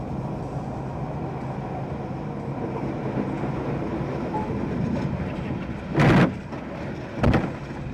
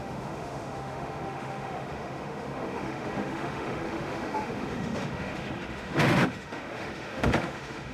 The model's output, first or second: second